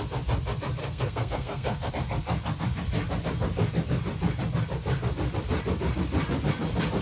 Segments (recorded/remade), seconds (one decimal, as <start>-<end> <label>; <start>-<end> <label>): 0.0-0.8 recorded; 0.8-1.9 remade; 1.9-7.0 recorded